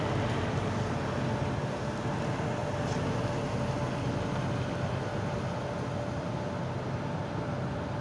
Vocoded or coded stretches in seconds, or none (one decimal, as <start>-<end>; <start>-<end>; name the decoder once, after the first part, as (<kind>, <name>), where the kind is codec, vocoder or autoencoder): none